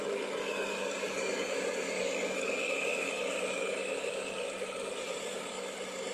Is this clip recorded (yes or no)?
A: no